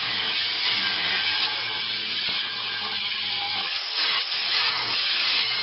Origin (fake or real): real